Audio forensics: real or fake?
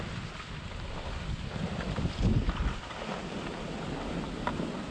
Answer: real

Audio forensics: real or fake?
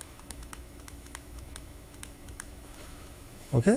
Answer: fake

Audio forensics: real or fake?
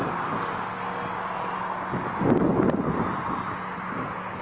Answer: real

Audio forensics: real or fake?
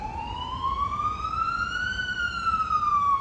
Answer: fake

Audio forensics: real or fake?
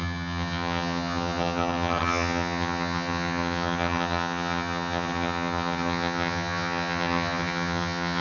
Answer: fake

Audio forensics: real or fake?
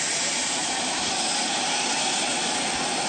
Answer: real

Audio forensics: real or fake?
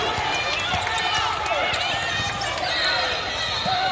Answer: real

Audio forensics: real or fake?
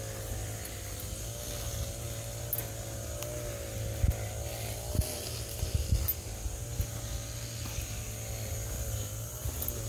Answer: real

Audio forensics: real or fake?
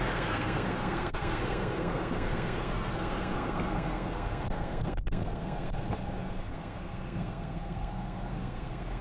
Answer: fake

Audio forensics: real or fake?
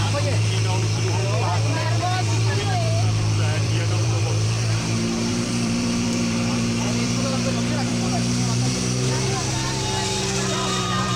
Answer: fake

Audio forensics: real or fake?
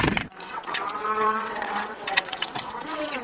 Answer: fake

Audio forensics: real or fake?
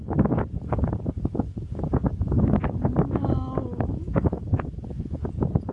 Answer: real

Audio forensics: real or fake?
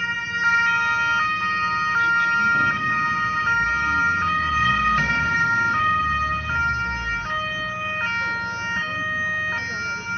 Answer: real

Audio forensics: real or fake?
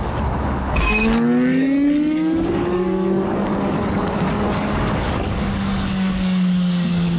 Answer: fake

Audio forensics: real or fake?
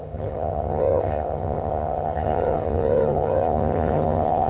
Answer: fake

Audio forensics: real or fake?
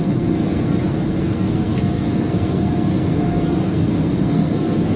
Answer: fake